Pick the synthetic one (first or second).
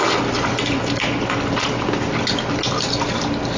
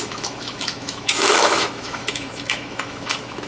second